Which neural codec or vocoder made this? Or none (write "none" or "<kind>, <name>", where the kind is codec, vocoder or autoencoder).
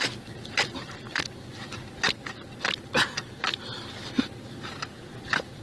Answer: none